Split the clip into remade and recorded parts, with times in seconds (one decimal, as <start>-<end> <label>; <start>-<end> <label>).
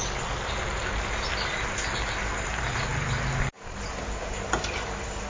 0.0-5.3 recorded